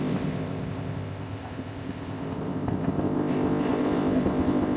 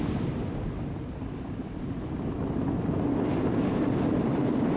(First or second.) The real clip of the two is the second